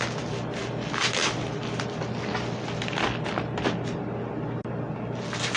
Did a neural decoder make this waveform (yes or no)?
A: no